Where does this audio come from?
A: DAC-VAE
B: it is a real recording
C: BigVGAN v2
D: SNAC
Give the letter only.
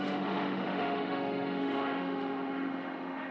A